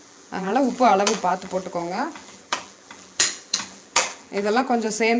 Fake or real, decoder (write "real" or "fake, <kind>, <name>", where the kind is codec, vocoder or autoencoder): fake, vocoder, BigVGAN v2